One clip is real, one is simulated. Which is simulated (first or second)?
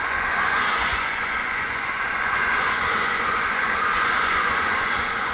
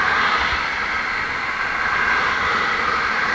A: first